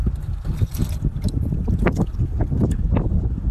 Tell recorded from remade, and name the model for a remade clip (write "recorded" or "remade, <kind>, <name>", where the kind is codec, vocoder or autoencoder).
recorded